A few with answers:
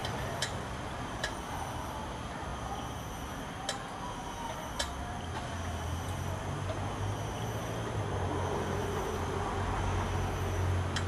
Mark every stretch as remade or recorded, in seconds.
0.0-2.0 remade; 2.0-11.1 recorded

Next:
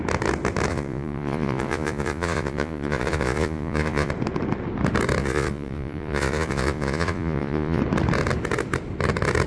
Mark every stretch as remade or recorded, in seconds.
0.0-0.7 recorded; 0.7-4.1 remade; 4.1-5.2 recorded; 5.2-7.8 remade; 7.8-9.5 recorded

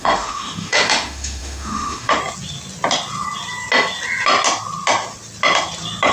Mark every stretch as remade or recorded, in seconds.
0.0-2.2 remade; 2.2-6.1 recorded